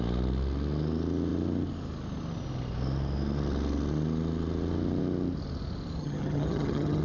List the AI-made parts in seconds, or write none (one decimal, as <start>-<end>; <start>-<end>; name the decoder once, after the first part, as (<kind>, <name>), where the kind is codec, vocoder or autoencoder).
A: 6.0-7.0 (vocoder, HiFi-GAN)